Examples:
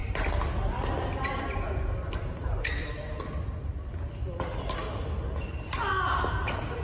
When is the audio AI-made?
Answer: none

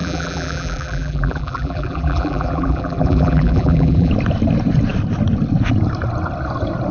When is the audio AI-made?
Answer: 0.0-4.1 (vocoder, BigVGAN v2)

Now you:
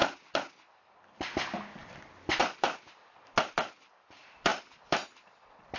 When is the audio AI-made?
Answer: none

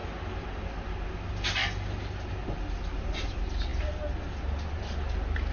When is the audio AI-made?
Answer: none

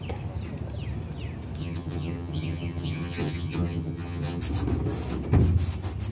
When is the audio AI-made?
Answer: 1.6-4.4 (vocoder, HiFi-GAN)

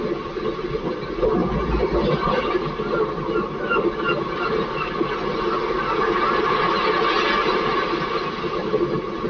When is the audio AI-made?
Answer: none